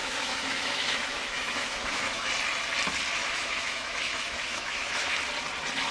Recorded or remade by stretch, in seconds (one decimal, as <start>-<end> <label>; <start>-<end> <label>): 0.0-2.3 remade; 2.3-3.2 recorded; 3.2-5.2 remade; 5.2-5.9 recorded